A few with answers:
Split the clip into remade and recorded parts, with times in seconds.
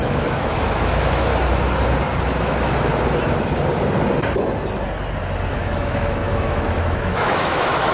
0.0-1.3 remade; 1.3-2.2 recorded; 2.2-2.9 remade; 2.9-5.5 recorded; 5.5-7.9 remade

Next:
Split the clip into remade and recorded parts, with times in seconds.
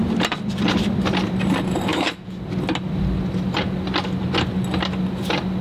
0.0-1.9 recorded; 1.9-2.4 remade; 2.4-5.6 recorded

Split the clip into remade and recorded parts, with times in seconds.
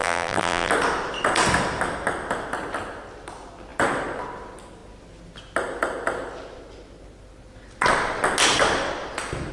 0.0-0.7 remade; 0.7-9.5 recorded